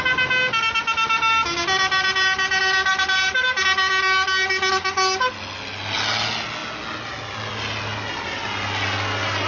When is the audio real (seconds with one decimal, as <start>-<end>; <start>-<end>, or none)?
0.0-9.5